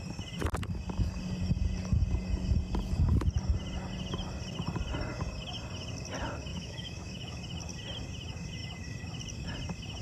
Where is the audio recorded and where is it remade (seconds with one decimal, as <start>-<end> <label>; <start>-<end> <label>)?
0.0-6.5 recorded; 6.5-7.4 remade; 7.4-10.0 recorded